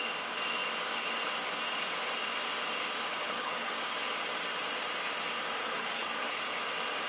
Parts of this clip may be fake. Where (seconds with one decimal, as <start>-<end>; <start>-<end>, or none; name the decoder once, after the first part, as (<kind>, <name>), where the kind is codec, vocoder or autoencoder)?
3.1-3.7 (codec, HILCodec); 5.6-6.4